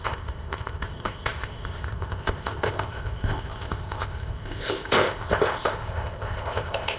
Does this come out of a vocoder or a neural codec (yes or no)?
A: yes